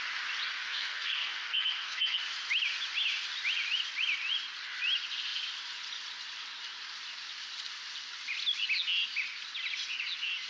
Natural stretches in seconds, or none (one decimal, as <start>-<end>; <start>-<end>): 0.0-0.6; 2.2-10.5